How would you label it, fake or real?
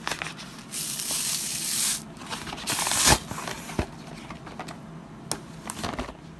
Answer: real